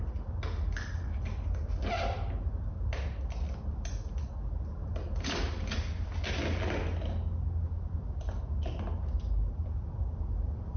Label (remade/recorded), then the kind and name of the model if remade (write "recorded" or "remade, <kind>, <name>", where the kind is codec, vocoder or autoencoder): recorded